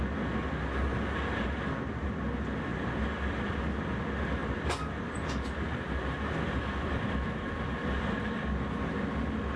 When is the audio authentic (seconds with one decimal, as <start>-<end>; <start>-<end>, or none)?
0.0-2.7; 3.6-4.4; 8.4-9.6